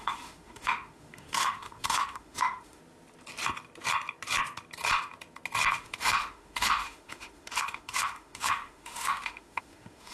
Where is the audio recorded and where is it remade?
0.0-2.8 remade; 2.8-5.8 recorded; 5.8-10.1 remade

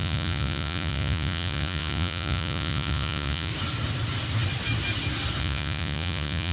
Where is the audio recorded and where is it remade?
0.0-3.5 remade; 3.5-5.4 recorded; 5.4-6.5 remade

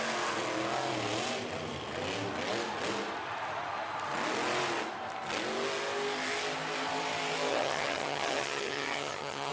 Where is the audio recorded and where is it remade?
0.0-7.5 recorded; 7.5-9.5 remade

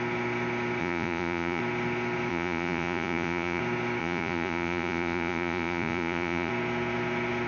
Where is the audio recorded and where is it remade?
0.0-0.8 recorded; 0.8-1.6 remade; 1.6-2.3 recorded; 2.3-3.6 remade; 3.6-4.0 recorded; 4.0-6.5 remade; 6.5-7.5 recorded

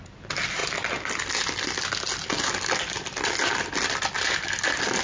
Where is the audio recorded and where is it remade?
0.0-5.0 recorded